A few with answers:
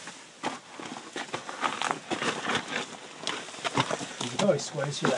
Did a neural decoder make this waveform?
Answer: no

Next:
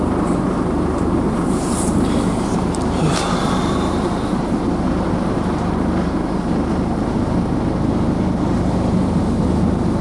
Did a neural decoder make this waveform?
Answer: yes